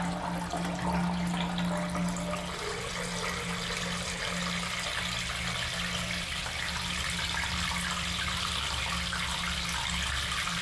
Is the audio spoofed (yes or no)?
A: no